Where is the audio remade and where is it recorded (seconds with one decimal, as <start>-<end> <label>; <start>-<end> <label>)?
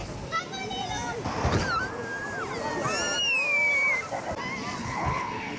0.0-4.8 recorded; 4.8-5.6 remade